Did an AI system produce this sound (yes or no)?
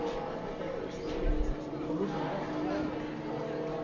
no